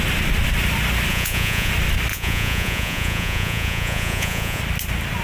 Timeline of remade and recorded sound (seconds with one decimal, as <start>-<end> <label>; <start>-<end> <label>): 0.0-1.1 recorded; 1.1-1.7 remade; 1.7-2.1 recorded; 2.1-4.6 remade; 4.6-5.2 recorded